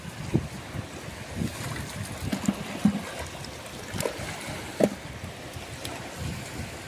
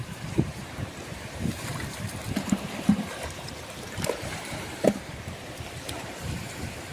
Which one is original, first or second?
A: first